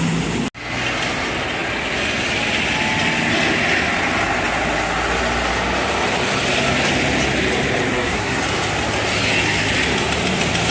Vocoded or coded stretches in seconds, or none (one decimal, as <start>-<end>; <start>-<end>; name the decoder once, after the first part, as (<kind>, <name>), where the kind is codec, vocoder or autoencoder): 7.9-8.4 (codec, SNAC)